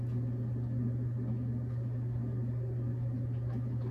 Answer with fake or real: real